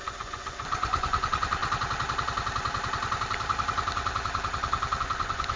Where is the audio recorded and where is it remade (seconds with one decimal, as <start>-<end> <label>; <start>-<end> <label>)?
0.0-1.6 remade; 1.6-5.0 recorded; 5.0-5.6 remade